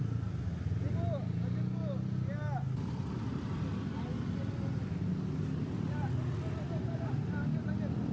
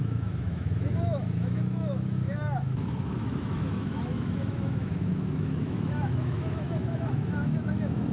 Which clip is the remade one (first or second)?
second